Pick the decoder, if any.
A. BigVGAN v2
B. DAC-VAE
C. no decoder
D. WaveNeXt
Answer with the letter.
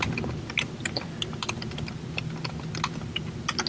C